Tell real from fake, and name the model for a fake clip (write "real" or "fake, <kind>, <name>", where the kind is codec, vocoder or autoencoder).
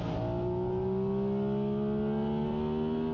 real